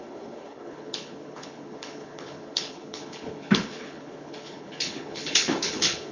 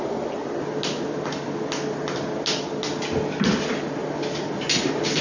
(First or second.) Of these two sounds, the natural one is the second